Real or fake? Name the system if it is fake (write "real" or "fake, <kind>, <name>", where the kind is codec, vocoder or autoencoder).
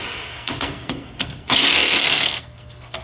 fake, codec, SNAC